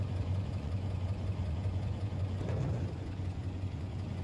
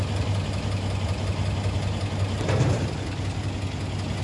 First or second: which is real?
second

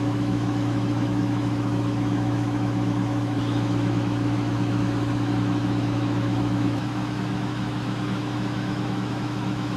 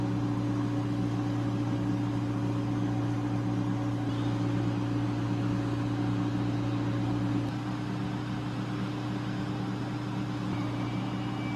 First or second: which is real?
second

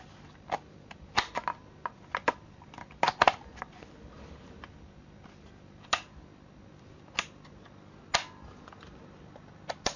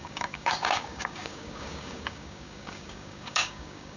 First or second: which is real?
first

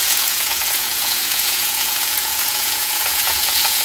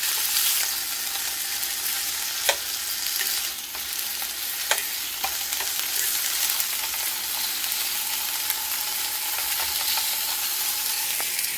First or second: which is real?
second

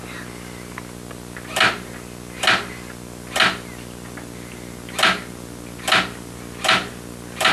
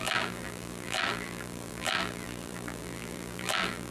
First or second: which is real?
first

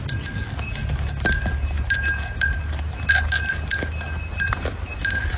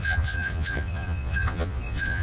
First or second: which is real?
first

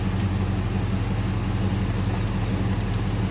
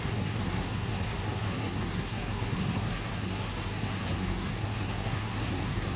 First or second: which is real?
first